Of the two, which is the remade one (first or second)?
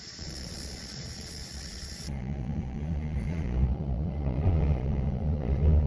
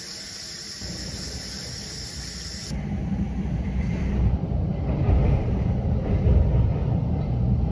first